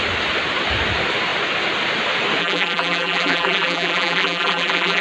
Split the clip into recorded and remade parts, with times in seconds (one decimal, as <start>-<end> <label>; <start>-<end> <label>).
0.0-2.4 recorded; 2.4-5.0 remade